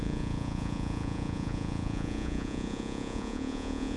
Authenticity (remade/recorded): remade